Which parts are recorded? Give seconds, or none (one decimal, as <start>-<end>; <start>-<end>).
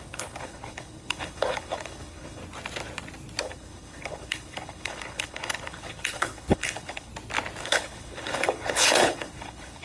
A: 2.4-3.4; 7.1-7.6